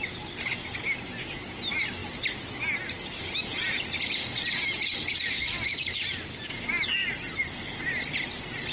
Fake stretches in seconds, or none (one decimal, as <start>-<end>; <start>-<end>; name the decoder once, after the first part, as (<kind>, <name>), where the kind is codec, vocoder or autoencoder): none